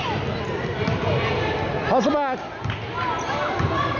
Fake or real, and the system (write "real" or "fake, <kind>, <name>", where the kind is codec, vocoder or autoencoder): real